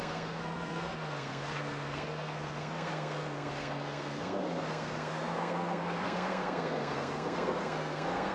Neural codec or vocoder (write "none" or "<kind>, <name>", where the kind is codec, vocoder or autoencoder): codec, SNAC